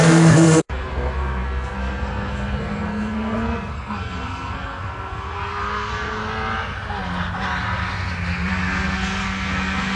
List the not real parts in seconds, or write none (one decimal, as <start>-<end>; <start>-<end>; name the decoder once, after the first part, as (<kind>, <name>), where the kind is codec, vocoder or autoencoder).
0.0-6.2 (codec, SNAC); 8.5-10.0